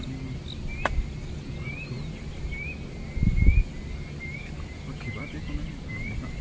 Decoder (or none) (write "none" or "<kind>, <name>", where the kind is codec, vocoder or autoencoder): none